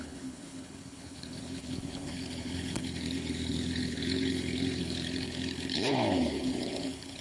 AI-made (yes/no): yes